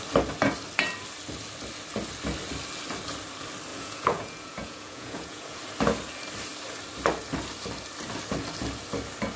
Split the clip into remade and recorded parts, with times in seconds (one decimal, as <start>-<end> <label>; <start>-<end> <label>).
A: 0.0-3.7 recorded; 3.7-5.6 remade; 5.6-9.4 recorded